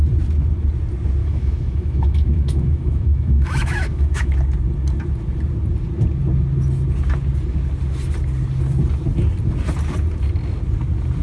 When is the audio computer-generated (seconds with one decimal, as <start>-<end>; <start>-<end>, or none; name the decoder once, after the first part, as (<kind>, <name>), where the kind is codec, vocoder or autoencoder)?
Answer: 1.2-4.3 (autoencoder, DAC-VAE)